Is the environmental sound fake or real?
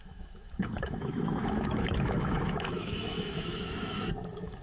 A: fake